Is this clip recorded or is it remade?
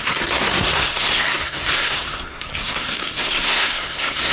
remade